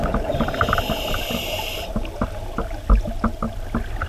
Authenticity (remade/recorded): recorded